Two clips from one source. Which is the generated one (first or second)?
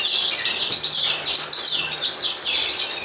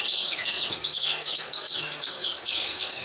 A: second